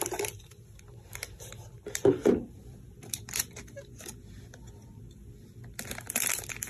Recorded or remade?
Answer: recorded